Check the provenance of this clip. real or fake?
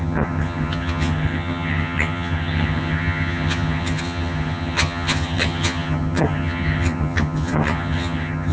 fake